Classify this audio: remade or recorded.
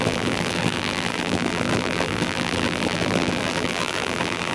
remade